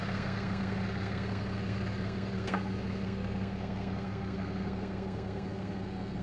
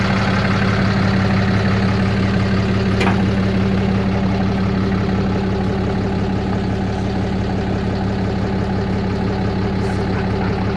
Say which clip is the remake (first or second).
first